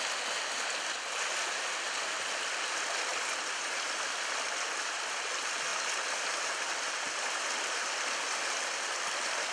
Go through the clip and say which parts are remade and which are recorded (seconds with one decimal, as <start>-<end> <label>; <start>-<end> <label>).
0.0-9.5 recorded